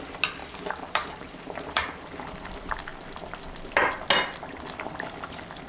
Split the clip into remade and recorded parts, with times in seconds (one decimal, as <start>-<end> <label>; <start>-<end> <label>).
0.0-0.4 recorded; 0.4-2.2 remade; 2.2-5.7 recorded